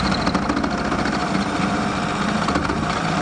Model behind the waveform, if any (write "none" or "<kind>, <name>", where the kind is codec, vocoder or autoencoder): none